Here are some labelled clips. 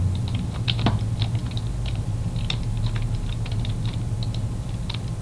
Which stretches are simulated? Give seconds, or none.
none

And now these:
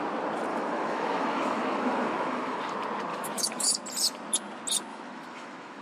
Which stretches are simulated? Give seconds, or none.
0.5-2.6; 3.1-3.8; 4.9-5.8

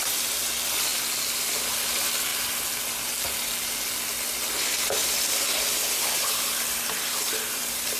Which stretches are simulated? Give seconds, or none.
none

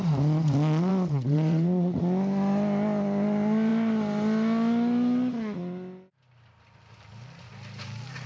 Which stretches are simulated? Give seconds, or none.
0.9-2.0